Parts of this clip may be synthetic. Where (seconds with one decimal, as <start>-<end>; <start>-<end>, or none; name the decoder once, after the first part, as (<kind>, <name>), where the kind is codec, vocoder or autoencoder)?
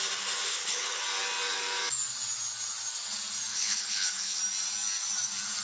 0.5-1.0 (codec, HILCodec); 3.5-4.4